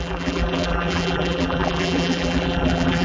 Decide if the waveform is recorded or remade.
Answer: remade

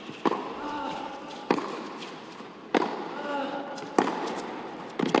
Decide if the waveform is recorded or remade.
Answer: remade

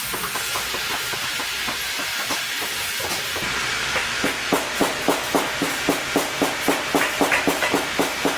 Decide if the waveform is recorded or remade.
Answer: recorded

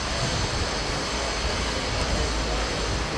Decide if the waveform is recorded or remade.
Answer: recorded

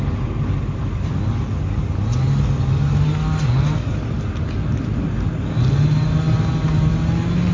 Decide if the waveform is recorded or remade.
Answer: recorded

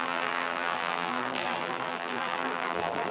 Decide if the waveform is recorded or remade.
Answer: remade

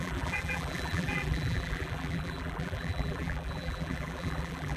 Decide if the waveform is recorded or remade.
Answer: remade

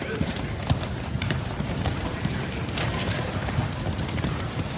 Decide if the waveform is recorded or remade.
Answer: remade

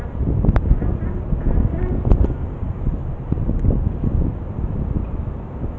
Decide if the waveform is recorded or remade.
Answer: recorded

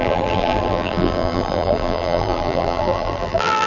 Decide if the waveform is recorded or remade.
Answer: remade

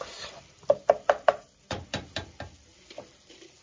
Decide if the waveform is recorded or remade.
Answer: remade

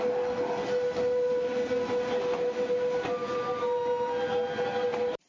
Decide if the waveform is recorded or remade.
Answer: recorded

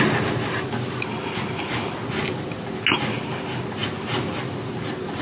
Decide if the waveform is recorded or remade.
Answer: recorded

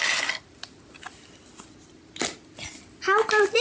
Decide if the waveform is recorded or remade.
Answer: recorded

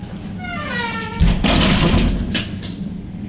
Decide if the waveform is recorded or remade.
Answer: recorded